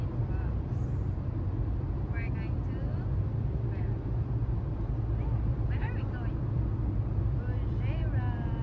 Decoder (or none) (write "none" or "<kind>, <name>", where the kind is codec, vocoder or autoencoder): none